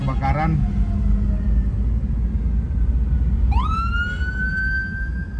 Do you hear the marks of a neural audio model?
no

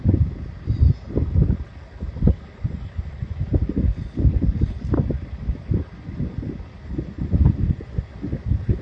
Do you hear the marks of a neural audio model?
no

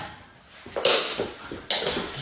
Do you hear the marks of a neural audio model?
no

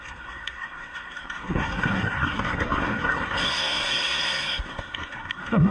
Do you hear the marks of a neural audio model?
yes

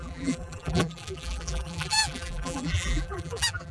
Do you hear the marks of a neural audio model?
yes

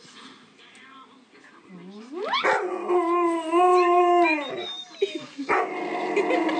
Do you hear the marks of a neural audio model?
no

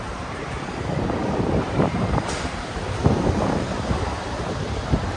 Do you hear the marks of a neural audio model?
yes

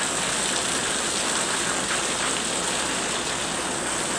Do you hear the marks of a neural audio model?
no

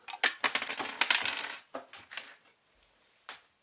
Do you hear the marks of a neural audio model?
no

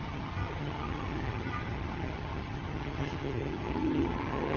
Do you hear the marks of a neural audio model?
yes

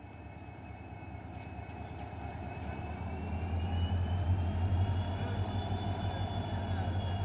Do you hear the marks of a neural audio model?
no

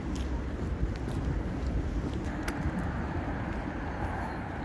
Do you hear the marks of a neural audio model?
no